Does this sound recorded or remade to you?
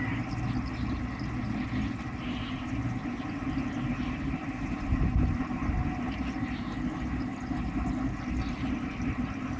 recorded